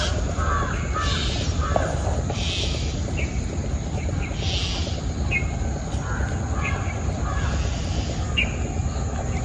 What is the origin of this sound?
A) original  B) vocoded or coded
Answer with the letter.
A